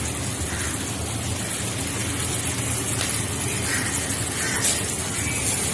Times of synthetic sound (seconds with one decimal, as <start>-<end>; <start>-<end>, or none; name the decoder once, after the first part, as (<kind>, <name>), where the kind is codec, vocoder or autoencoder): none

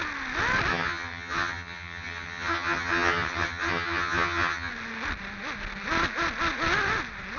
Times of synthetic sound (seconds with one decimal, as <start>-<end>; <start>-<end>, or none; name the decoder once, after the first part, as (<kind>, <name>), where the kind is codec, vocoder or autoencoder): 0.7-4.7 (vocoder, HiFi-GAN)